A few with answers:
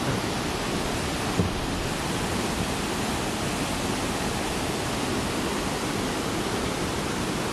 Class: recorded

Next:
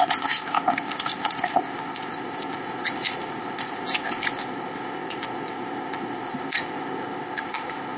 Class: remade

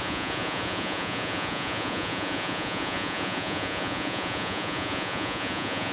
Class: remade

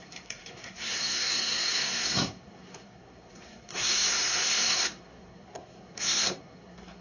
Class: remade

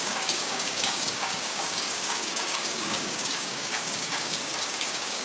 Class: remade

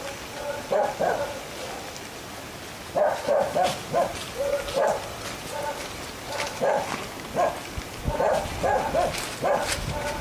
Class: recorded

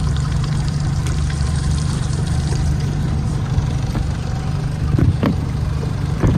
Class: remade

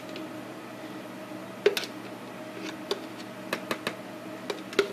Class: recorded